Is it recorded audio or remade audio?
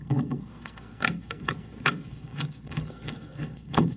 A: remade